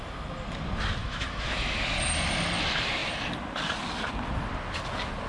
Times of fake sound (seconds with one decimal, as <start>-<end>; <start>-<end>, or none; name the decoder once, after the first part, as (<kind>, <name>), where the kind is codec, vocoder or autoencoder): 1.0-1.8 (autoencoder, DAC-VAE)